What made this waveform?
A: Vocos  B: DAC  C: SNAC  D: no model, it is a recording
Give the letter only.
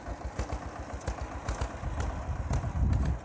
D